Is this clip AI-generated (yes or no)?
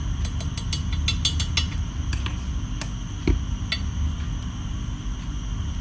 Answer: no